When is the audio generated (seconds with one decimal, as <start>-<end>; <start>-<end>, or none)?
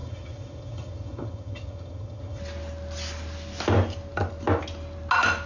0.0-2.4